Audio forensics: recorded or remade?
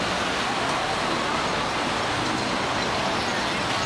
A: recorded